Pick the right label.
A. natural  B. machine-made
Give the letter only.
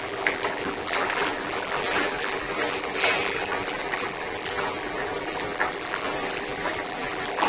B